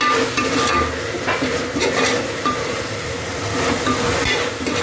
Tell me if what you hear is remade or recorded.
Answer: recorded